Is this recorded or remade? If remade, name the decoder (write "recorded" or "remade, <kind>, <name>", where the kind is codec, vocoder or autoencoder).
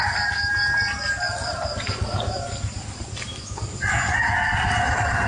recorded